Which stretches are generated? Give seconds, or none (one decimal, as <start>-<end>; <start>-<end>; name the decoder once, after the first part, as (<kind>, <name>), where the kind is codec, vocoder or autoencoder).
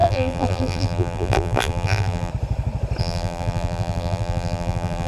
0.0-2.3 (vocoder, BigVGAN v2); 3.0-5.1